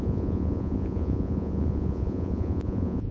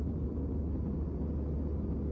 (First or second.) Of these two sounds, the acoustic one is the second